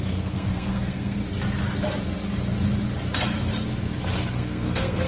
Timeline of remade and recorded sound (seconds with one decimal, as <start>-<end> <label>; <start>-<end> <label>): 0.0-1.2 remade; 1.2-4.3 recorded; 4.3-5.1 remade